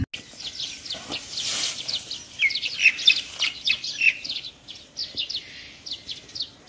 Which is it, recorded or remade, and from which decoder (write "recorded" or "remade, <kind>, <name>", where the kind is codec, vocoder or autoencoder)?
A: recorded